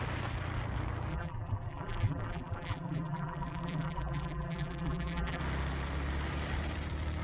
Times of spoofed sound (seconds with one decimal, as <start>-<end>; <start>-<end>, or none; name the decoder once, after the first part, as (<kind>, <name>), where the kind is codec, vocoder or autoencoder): 1.1-5.4 (vocoder, BigVGAN v2)

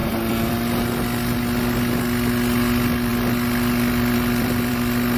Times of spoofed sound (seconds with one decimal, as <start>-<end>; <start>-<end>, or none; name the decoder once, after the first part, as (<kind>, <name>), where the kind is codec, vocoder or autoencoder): 0.0-0.5 (vocoder, BigVGAN v2); 3.1-4.7

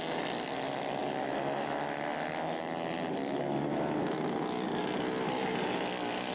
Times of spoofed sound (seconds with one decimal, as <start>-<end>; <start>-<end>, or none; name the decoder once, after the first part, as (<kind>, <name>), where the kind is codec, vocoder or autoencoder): none

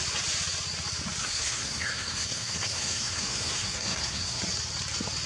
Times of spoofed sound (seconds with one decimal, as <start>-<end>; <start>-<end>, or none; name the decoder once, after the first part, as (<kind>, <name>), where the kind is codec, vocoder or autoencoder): 1.2-4.4 (codec, SNAC)